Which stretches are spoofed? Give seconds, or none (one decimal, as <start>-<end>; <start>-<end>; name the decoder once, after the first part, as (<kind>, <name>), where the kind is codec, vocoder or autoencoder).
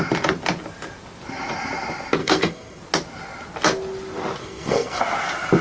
2.2-2.8 (codec, SNAC); 4.4-5.0